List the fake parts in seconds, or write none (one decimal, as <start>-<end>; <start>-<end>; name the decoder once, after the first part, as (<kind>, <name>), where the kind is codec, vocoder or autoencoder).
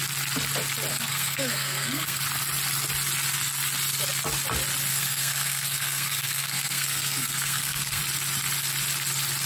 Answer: 0.9-2.2 (codec, SNAC); 4.9-8.0